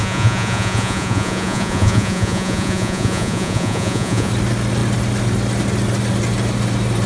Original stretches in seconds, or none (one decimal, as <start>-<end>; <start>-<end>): 4.3-7.1